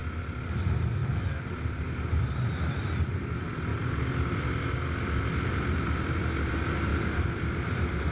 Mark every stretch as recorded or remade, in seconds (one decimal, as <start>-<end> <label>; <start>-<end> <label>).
0.0-3.7 recorded; 3.7-4.5 remade; 4.5-6.9 recorded; 6.9-8.1 remade

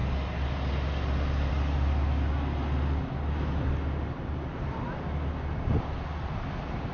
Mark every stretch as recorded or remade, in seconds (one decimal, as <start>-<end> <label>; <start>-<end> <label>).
0.0-6.9 recorded

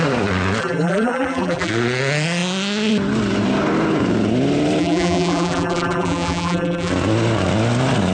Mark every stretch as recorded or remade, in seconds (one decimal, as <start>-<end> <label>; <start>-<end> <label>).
0.0-0.6 recorded; 0.6-1.7 remade; 1.7-4.8 recorded; 4.8-6.9 remade; 6.9-8.1 recorded

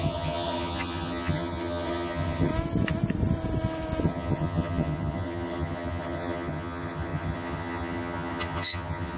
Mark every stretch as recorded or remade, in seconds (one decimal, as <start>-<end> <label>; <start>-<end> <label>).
0.0-2.5 remade; 2.5-4.0 recorded; 4.0-9.2 remade

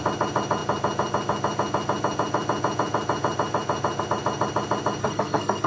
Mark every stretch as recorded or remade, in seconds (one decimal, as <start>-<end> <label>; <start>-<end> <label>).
0.0-5.0 recorded; 5.0-5.7 remade

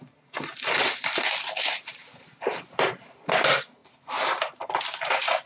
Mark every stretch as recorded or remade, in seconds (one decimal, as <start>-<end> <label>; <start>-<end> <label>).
0.0-5.5 recorded